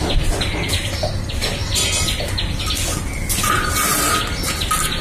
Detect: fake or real real